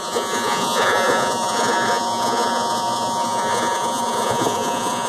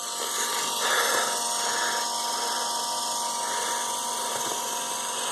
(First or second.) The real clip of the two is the second